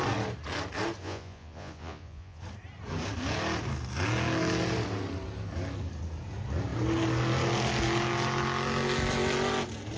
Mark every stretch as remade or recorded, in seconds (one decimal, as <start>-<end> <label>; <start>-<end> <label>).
0.0-1.0 recorded; 1.0-2.4 remade; 2.4-10.0 recorded